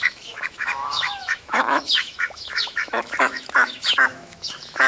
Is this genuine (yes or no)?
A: no